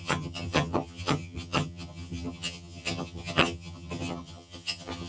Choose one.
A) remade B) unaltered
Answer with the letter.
A